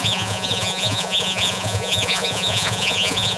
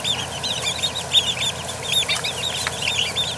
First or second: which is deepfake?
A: first